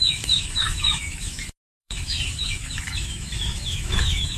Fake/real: fake